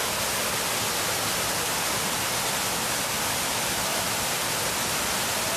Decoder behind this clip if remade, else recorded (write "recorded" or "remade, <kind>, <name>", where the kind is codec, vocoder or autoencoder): recorded